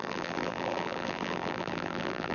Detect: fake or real fake